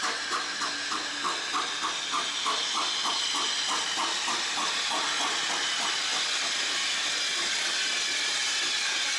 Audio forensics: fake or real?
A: real